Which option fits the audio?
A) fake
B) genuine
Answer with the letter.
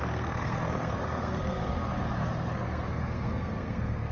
A